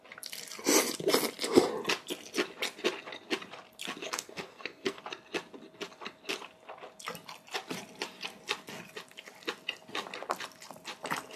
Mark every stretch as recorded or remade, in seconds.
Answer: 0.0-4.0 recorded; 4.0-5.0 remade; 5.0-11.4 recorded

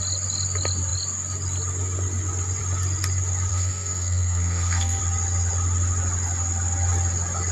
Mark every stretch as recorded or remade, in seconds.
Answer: 0.0-3.5 recorded; 3.5-5.0 remade; 5.0-7.5 recorded